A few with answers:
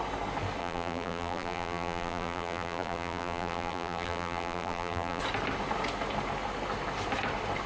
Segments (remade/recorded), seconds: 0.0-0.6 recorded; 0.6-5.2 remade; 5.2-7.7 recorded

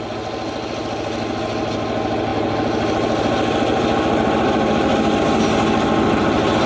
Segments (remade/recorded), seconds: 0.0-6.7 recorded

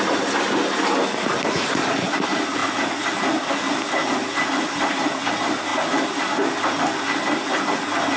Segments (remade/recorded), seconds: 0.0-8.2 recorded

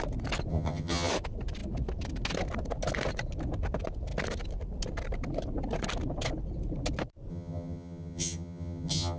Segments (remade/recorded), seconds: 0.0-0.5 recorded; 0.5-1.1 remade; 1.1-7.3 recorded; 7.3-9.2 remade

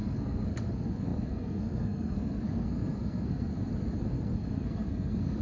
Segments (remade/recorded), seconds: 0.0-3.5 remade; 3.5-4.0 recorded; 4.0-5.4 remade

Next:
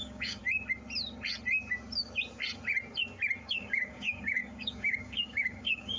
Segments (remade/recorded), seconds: 0.0-0.4 remade; 0.4-3.4 recorded; 3.4-6.0 remade

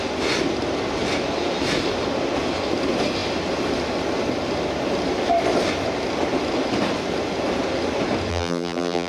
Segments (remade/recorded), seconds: 0.0-8.3 recorded; 8.3-9.1 remade